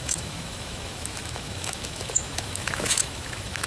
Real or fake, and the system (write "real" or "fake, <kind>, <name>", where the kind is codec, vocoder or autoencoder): fake, autoencoder, DAC-VAE